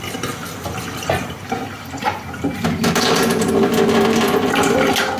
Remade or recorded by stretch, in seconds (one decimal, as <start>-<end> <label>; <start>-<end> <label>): 0.0-0.4 recorded; 0.4-3.5 remade; 3.5-5.2 recorded

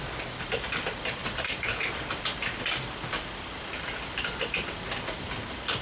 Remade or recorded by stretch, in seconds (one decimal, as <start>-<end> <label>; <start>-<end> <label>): 0.0-5.8 recorded

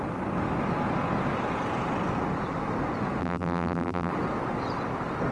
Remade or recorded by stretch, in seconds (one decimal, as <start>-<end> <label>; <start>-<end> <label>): 0.0-3.2 recorded; 3.2-4.1 remade; 4.1-5.3 recorded

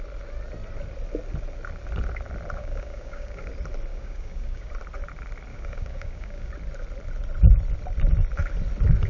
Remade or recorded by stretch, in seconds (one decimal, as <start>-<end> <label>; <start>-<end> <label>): 0.0-2.6 recorded; 2.6-3.5 remade; 3.5-3.9 recorded; 3.9-4.7 remade; 4.7-5.5 recorded; 5.5-6.5 remade; 6.5-9.1 recorded

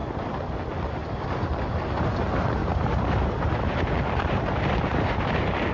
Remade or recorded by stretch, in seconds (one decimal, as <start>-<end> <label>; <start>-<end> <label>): 0.0-0.6 remade; 0.6-1.0 recorded; 1.0-1.7 remade; 1.7-2.6 recorded; 2.6-5.7 remade